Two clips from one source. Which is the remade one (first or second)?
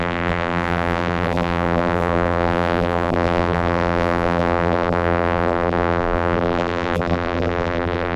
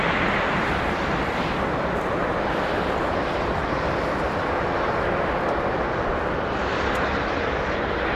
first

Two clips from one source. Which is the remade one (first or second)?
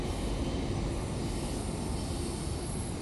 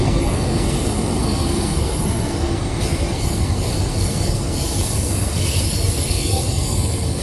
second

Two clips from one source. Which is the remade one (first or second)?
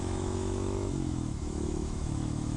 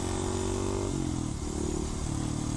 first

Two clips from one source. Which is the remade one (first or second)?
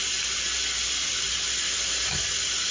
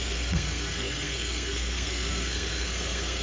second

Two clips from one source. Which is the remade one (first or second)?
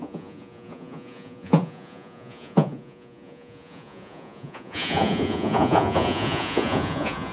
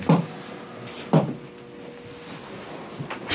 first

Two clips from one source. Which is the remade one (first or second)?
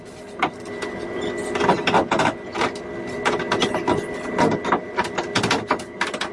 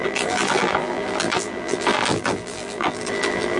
second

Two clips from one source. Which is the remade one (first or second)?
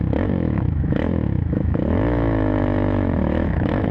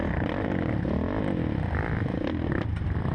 first